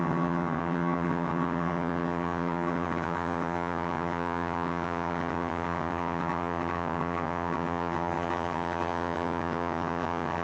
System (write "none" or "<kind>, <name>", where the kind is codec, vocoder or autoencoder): vocoder, HiFi-GAN